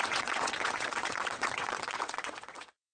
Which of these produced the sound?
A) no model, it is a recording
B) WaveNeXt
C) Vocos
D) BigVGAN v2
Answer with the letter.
B